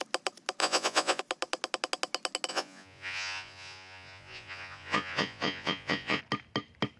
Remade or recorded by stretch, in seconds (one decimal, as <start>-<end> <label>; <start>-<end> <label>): 0.0-0.6 recorded; 0.6-1.2 remade; 1.2-2.5 recorded; 2.5-6.2 remade; 6.2-7.0 recorded